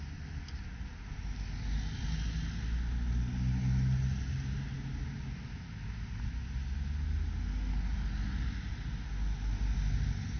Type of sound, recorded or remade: recorded